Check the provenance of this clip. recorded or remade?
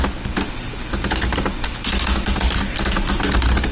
recorded